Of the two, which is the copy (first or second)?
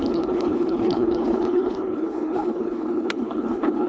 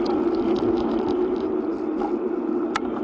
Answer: first